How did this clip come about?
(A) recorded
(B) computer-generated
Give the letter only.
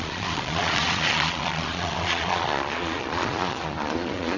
B